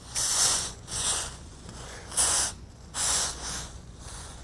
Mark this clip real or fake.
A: fake